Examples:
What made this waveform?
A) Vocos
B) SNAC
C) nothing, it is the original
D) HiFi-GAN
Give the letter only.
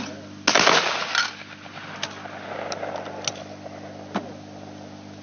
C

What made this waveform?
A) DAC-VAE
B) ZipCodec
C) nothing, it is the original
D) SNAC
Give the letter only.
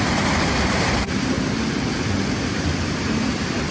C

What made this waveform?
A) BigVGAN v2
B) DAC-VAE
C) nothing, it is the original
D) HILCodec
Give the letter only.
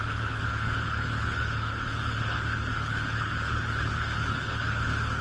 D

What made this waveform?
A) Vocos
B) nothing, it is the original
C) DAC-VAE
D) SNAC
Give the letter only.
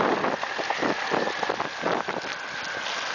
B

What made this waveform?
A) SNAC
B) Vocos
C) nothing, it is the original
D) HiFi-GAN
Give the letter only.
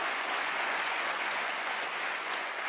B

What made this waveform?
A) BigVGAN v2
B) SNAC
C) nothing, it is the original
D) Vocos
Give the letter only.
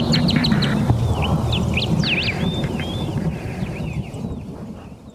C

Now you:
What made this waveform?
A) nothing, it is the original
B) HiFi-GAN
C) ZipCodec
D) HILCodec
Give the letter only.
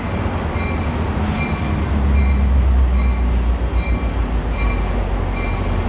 A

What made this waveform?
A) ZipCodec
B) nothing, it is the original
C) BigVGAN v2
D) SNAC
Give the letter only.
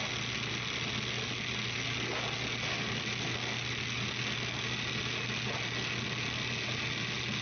B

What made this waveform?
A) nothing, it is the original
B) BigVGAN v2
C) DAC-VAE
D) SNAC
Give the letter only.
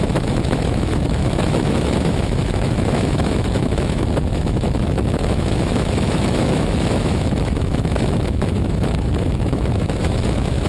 C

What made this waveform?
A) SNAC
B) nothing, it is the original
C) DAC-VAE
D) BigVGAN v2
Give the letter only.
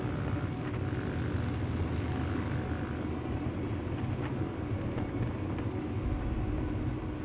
B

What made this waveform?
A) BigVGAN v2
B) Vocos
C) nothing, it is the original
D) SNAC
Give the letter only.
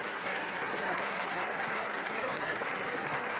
D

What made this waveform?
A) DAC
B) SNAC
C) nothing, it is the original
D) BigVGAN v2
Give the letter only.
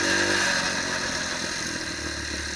C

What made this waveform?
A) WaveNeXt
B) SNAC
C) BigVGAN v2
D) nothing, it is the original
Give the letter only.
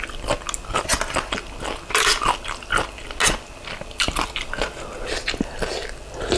D